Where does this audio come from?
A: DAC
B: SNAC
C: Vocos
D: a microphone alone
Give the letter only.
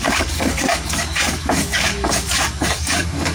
A